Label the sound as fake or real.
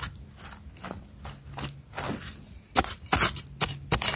real